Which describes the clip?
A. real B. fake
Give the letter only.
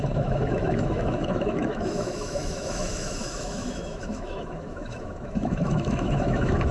B